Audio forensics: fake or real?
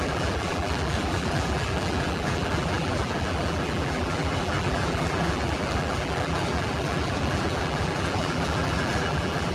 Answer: fake